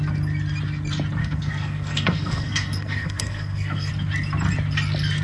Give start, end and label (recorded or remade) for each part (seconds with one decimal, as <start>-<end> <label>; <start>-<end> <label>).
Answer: 0.0-1.2 recorded; 1.2-3.9 remade; 3.9-5.2 recorded